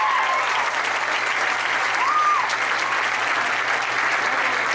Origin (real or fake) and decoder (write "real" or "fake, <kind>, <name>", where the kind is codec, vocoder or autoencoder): real